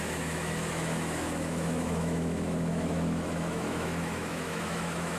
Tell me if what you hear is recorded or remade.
remade